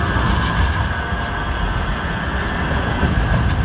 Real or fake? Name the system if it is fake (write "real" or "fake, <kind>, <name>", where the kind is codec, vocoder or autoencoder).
real